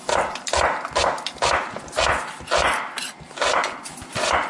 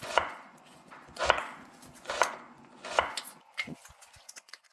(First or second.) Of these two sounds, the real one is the first